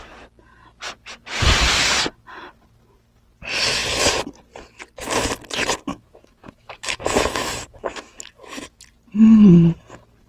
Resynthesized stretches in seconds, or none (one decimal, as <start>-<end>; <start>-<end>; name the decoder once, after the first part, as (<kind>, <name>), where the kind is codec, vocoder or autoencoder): 5.9-8.8 (autoencoder, DAC-VAE)